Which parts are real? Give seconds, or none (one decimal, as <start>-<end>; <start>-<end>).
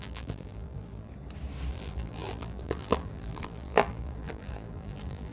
1.1-1.7